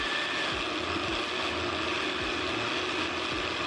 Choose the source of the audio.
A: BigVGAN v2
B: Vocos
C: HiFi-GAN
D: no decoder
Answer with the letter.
D